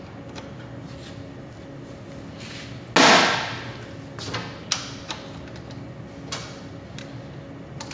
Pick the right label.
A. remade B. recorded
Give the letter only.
B